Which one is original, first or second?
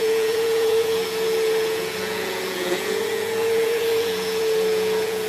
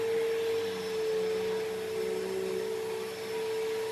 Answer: second